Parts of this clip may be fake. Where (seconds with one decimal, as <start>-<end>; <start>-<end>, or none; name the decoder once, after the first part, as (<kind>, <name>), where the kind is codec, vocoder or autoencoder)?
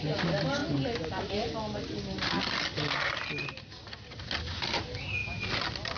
none